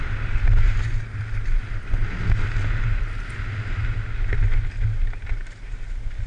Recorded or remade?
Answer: recorded